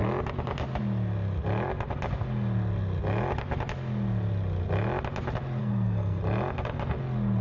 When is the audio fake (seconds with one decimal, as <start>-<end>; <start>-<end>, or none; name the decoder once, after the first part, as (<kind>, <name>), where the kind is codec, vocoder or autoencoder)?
5.6-6.2 (codec, SNAC)